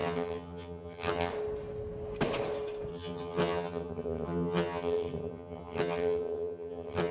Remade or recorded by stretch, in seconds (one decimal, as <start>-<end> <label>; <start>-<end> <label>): 0.0-1.3 remade; 1.3-2.9 recorded; 2.9-7.1 remade